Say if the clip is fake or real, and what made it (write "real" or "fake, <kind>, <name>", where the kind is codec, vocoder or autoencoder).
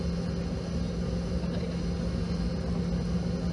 real